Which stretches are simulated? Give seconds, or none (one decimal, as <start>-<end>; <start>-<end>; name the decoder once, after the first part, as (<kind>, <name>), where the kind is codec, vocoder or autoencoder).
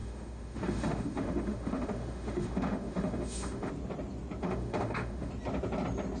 0.0-3.7 (autoencoder, DAC-VAE); 4.4-5.3